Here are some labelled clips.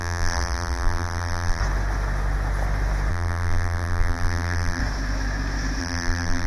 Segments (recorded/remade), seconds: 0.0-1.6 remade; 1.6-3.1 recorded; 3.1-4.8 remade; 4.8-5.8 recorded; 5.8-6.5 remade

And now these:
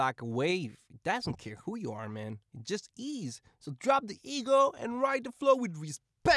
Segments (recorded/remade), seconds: 0.0-6.4 recorded

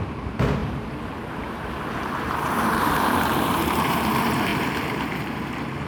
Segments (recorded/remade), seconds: 0.0-5.9 remade

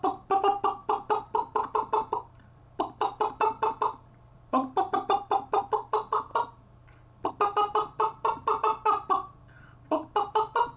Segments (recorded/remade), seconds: 0.0-0.8 recorded; 0.8-5.6 remade; 5.6-10.8 recorded

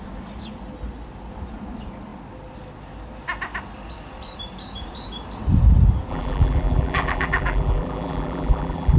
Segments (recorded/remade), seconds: 0.0-6.1 recorded; 6.1-9.0 remade